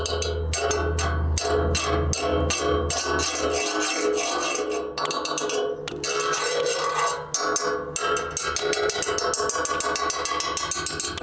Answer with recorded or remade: recorded